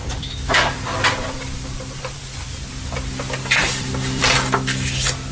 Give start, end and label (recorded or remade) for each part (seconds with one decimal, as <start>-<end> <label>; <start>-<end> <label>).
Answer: 0.0-2.2 remade; 2.2-3.6 recorded; 3.6-4.2 remade; 4.2-5.3 recorded